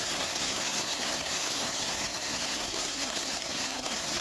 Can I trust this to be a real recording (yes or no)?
no